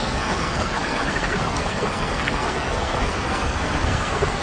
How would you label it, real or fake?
fake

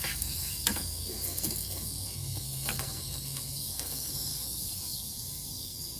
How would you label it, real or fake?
fake